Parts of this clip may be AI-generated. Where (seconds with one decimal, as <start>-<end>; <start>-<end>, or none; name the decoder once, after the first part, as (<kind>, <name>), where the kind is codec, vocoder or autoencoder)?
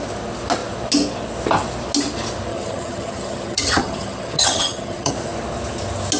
2.5-5.1 (vocoder, HiFi-GAN)